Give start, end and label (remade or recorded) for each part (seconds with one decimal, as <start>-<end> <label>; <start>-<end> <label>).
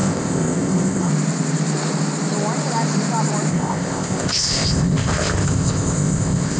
0.0-1.1 remade; 1.1-3.5 recorded; 3.5-6.6 remade